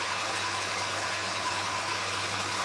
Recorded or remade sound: remade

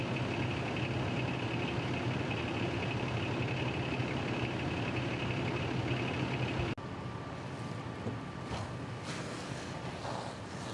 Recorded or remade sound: recorded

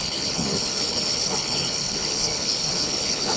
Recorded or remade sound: remade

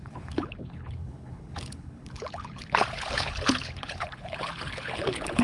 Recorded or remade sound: remade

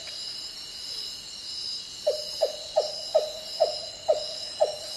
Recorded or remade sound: recorded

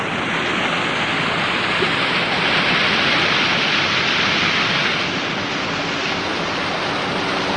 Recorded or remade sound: recorded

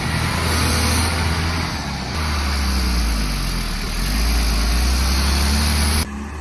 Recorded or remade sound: recorded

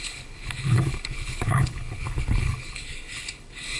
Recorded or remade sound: remade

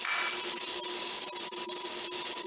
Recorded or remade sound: recorded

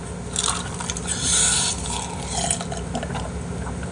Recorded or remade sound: recorded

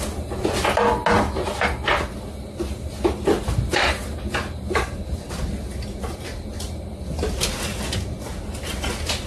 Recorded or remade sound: recorded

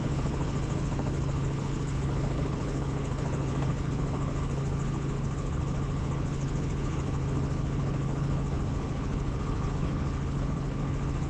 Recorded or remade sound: remade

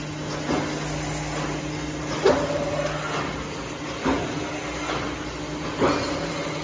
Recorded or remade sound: recorded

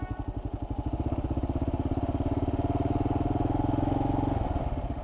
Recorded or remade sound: recorded